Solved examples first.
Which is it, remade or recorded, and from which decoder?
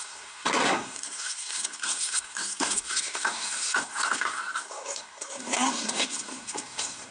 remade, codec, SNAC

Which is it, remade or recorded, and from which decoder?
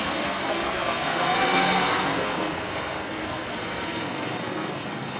remade, codec, SNAC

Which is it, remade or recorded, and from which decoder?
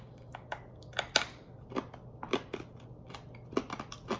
recorded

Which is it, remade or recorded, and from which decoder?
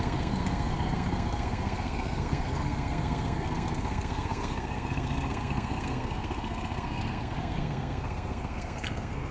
remade, codec, SNAC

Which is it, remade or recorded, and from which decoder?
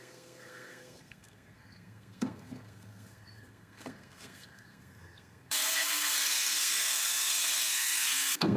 remade, codec, SNAC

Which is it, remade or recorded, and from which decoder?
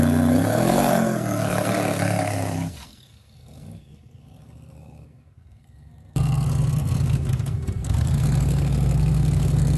remade, codec, SNAC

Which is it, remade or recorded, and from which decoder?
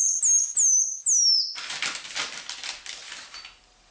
recorded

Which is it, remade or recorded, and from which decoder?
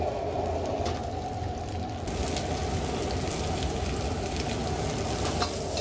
recorded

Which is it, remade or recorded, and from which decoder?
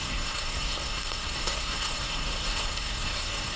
remade, codec, SNAC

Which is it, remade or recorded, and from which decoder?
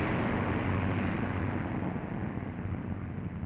recorded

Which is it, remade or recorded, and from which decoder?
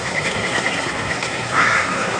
remade, codec, SNAC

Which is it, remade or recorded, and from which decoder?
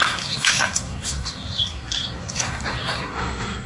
remade, codec, SNAC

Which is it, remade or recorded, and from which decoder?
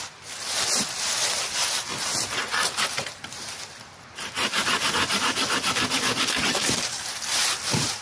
recorded